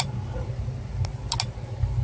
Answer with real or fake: real